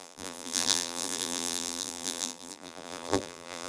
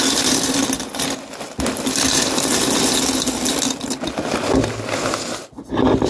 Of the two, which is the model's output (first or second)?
first